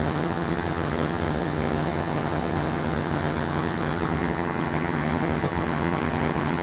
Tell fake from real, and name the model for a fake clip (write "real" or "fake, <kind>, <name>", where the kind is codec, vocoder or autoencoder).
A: fake, vocoder, HiFi-GAN